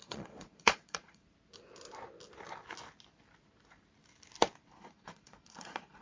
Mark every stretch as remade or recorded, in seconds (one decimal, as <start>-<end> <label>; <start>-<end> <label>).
0.0-1.2 remade; 1.2-4.8 recorded; 4.8-6.0 remade